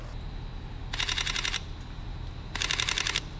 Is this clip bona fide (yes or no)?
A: yes